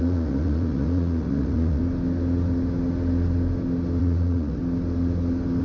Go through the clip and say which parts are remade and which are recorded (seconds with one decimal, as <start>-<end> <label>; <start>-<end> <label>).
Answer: 0.0-1.8 remade; 1.8-4.0 recorded; 4.0-4.6 remade; 4.6-5.6 recorded

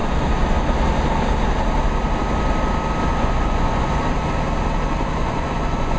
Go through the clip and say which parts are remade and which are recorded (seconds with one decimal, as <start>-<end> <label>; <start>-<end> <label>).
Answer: 0.0-3.1 recorded; 3.1-4.0 remade; 4.0-5.2 recorded; 5.2-6.0 remade

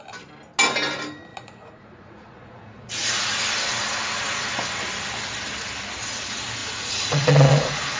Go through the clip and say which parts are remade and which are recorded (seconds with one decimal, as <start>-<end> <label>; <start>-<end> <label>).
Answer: 0.0-1.3 recorded; 1.3-3.4 remade; 3.4-6.6 recorded; 6.6-8.0 remade

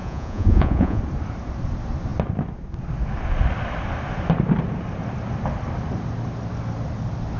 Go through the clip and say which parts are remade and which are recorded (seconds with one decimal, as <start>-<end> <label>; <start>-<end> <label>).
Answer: 0.0-1.0 remade; 1.0-7.4 recorded